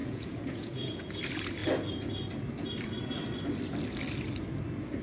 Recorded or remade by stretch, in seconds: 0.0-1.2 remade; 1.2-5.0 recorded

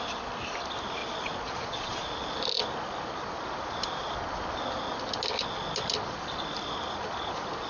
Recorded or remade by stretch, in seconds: 0.0-1.0 recorded; 1.0-2.1 remade; 2.1-7.7 recorded